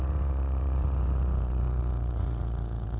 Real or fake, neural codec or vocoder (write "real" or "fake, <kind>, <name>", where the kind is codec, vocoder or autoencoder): fake, vocoder, Vocos